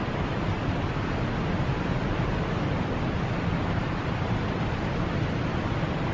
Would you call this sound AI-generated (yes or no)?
no